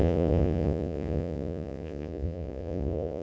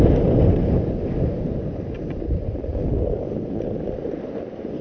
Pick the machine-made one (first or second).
first